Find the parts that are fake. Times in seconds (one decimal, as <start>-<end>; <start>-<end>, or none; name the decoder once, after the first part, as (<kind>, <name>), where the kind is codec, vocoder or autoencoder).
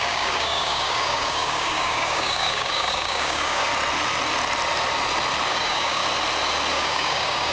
0.0-3.7 (codec, DAC); 5.5-6.0; 6.7-7.5